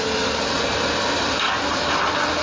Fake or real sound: real